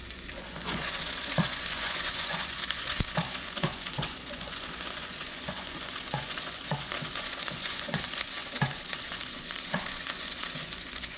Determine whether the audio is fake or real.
fake